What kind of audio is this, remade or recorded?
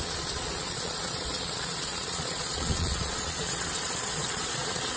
remade